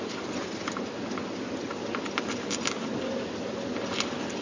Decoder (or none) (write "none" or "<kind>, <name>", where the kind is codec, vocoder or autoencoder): none